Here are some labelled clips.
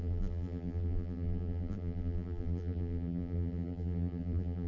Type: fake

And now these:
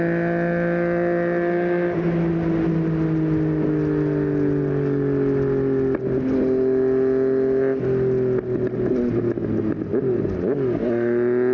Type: real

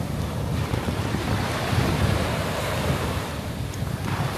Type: fake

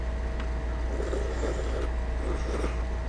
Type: real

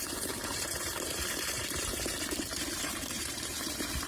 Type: fake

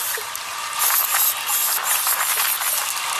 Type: real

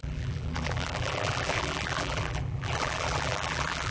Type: fake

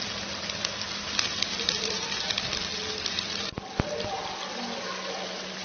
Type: fake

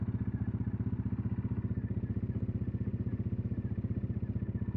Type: real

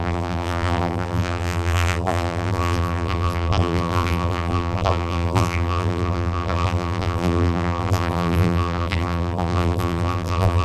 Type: fake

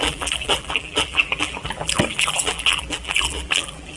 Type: fake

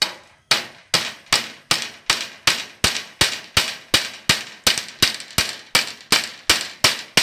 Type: real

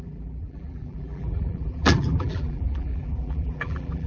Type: fake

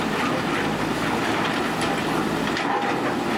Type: fake